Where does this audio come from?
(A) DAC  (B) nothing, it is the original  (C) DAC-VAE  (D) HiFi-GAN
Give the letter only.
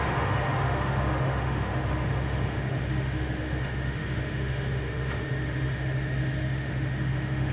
C